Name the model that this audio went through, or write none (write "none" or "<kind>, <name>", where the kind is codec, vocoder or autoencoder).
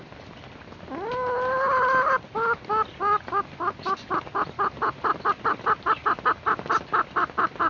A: none